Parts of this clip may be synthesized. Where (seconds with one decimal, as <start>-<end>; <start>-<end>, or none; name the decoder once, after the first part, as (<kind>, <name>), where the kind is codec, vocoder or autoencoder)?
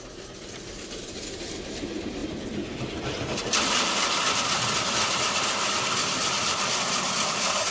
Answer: none